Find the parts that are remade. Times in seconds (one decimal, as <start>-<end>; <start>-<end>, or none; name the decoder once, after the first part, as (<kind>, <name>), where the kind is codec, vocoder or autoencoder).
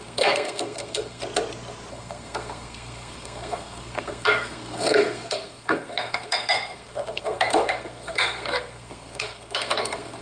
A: 0.0-1.2 (codec, SNAC); 1.9-10.2